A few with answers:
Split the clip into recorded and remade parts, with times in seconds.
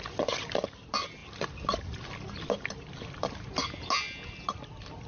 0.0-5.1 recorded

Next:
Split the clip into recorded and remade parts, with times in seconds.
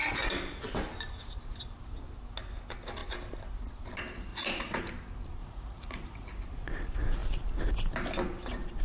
0.0-4.3 recorded; 4.3-4.8 remade; 4.8-5.4 recorded; 5.4-6.3 remade; 6.3-8.8 recorded